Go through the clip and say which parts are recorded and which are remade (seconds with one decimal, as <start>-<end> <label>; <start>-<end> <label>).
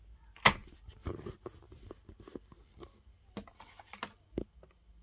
0.0-5.0 recorded